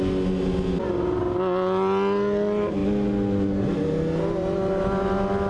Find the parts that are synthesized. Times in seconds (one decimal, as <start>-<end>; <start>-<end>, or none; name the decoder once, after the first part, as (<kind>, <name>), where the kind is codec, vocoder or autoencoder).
none